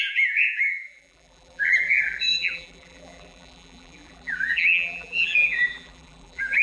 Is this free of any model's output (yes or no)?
no